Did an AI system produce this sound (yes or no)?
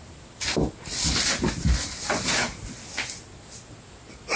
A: no